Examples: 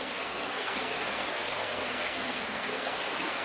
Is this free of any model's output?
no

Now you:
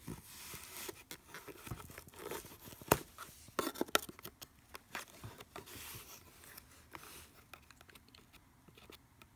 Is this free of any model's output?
yes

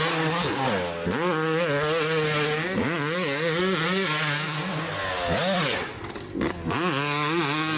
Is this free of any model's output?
yes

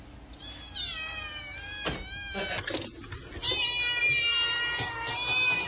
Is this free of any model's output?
yes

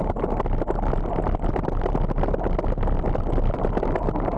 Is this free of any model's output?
yes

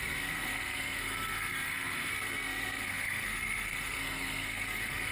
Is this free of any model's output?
no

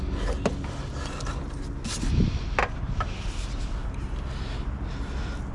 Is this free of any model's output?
yes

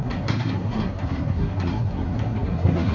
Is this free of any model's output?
no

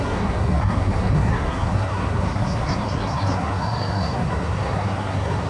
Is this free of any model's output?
no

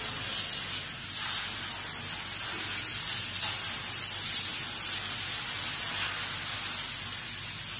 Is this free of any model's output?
yes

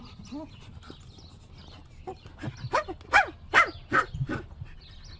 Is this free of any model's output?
yes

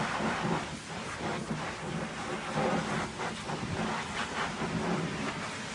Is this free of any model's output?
yes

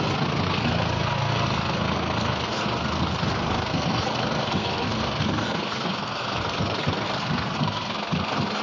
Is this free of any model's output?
no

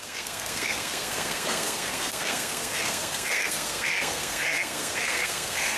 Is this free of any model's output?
no